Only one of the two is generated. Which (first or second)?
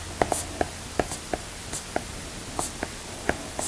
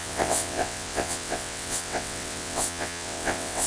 second